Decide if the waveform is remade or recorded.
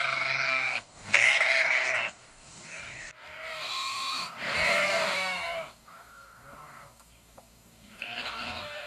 remade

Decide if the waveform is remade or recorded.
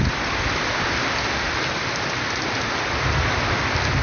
recorded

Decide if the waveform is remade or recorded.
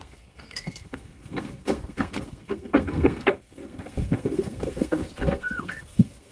remade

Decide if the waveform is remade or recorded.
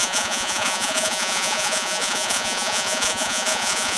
remade